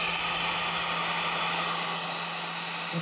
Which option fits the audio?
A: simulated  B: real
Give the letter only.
B